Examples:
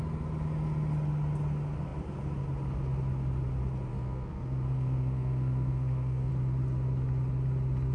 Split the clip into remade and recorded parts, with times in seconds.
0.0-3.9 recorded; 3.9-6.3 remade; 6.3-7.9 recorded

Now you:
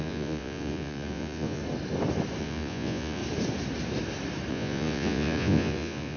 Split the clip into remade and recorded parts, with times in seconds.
0.0-1.6 remade; 1.6-2.4 recorded; 2.4-3.2 remade; 3.2-4.5 recorded; 4.5-6.2 remade

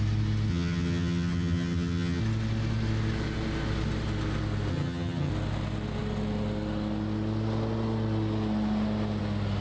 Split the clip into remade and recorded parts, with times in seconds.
0.0-0.5 recorded; 0.5-2.2 remade; 2.2-4.7 recorded; 4.7-5.3 remade; 5.3-9.6 recorded

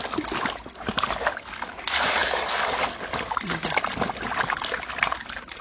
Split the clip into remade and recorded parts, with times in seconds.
0.0-5.6 recorded

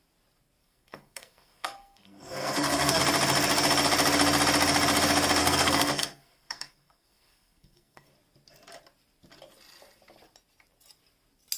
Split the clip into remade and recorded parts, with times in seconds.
0.0-0.6 recorded; 0.6-3.0 remade; 3.0-5.4 recorded; 5.4-8.1 remade; 8.1-11.6 recorded

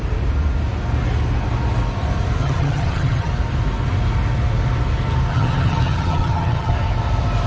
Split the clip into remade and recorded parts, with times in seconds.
0.0-2.4 recorded; 2.4-3.3 remade; 3.3-5.3 recorded; 5.3-6.7 remade; 6.7-7.5 recorded

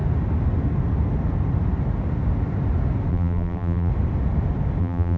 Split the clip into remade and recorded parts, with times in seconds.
0.0-3.1 recorded; 3.1-3.9 remade; 3.9-4.8 recorded; 4.8-5.2 remade

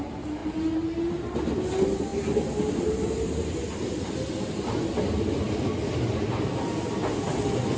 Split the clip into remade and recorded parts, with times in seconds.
0.0-7.8 recorded